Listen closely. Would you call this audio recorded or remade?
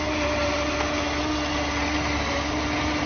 recorded